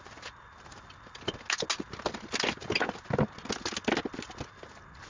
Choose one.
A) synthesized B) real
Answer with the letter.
B